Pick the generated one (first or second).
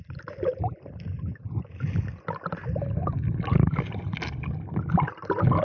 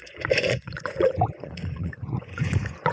second